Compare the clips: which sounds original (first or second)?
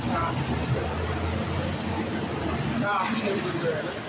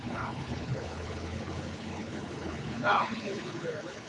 first